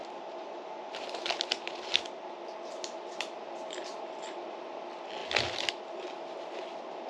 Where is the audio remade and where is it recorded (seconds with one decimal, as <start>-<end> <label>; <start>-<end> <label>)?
0.0-7.1 recorded